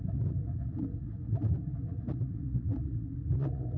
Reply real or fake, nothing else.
fake